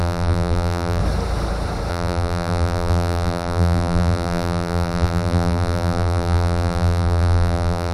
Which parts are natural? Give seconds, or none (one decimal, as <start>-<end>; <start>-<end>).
1.0-1.9